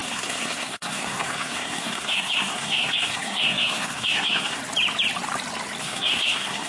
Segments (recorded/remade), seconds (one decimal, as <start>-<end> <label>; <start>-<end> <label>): 0.0-4.6 remade; 4.6-5.8 recorded; 5.8-6.7 remade